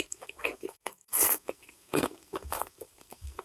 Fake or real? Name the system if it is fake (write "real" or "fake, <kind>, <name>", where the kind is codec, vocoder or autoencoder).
fake, codec, SNAC